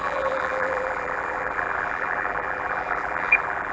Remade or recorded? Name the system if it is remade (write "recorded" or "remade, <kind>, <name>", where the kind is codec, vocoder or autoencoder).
remade, vocoder, BigVGAN v2